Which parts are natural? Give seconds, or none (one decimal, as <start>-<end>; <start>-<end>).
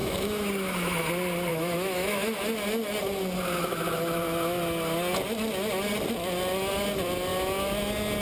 1.1-1.5; 2.4-8.2